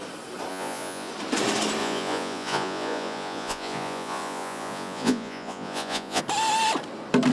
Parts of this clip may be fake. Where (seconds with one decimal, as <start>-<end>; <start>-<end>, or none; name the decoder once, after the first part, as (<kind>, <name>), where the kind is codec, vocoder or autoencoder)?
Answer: 0.5-1.1 (vocoder, Vocos); 1.8-6.2